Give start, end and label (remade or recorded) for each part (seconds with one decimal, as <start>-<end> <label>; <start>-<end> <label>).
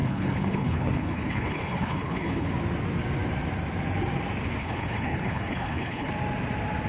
0.0-2.5 remade; 2.5-4.6 recorded; 4.6-6.1 remade; 6.1-6.9 recorded